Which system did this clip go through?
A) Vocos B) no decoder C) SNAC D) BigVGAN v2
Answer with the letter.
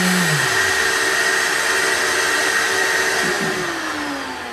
B